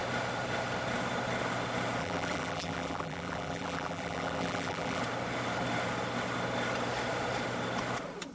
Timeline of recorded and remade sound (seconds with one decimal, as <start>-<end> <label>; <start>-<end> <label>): 0.0-2.0 recorded; 2.0-5.0 remade; 5.0-8.3 recorded